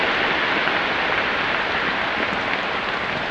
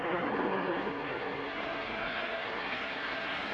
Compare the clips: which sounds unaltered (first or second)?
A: first